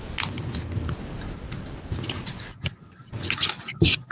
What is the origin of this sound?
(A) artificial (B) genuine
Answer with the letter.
B